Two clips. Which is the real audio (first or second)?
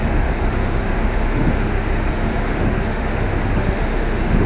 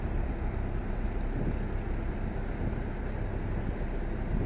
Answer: second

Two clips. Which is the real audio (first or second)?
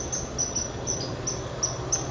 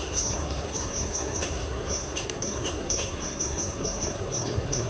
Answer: first